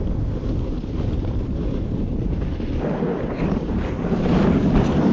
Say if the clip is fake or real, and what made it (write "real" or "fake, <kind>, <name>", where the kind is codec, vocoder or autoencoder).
real